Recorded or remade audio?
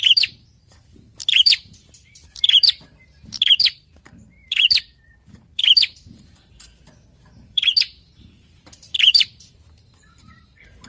remade